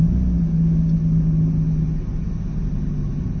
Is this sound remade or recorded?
recorded